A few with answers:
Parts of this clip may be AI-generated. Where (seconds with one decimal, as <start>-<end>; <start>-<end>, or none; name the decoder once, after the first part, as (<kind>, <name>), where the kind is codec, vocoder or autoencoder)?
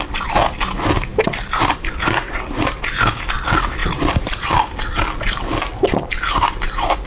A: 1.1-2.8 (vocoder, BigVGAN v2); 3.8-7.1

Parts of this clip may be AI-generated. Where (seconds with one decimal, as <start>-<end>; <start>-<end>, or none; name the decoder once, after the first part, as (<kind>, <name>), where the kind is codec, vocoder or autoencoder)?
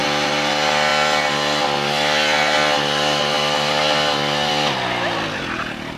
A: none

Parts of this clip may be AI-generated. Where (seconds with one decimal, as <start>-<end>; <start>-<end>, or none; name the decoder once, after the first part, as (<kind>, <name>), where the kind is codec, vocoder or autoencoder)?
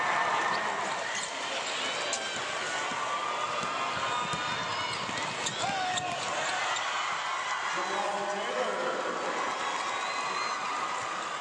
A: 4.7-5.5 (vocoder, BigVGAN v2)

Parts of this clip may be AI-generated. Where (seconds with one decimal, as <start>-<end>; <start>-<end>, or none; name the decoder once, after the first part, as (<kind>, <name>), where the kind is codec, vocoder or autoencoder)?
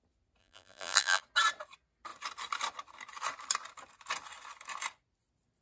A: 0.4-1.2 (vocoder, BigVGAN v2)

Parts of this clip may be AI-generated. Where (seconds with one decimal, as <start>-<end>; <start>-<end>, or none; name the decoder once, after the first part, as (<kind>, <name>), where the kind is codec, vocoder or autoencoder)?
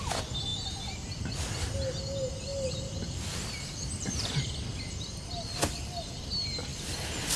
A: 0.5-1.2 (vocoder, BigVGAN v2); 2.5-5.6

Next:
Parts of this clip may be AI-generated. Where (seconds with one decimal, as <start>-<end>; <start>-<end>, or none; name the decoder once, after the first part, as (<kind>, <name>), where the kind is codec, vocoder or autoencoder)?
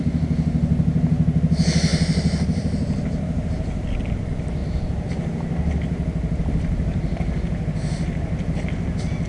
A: 1.9-3.5 (vocoder, BigVGAN v2); 4.6-5.1